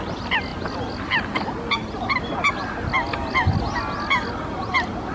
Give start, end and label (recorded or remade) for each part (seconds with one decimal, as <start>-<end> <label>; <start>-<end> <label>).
0.0-5.1 recorded